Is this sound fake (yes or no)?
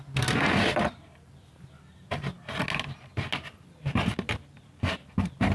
no